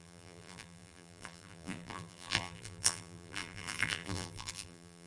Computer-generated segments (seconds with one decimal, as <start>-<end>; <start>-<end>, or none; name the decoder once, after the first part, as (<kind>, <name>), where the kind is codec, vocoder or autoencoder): 0.0-5.1 (vocoder, BigVGAN v2)